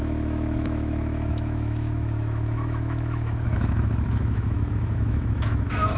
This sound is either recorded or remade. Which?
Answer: remade